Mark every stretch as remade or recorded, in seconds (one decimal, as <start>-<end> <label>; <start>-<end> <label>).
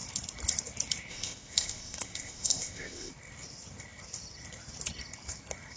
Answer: 0.0-1.1 recorded; 1.1-3.1 remade; 3.1-5.8 recorded